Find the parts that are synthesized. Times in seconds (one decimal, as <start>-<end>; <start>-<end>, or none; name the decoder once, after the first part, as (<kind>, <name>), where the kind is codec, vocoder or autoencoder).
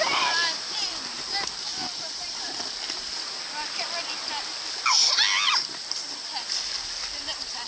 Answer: 1.7-2.4 (vocoder, BigVGAN v2)